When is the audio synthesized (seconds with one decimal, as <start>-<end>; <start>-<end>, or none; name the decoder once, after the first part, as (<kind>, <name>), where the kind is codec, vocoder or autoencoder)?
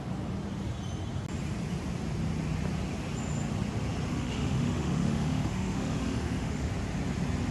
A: 4.1-6.7 (autoencoder, DAC-VAE)